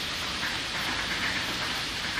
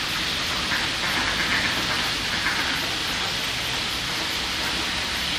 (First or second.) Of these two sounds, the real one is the second